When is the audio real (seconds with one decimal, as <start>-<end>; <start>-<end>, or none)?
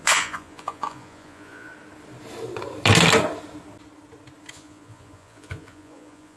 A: 1.7-4.5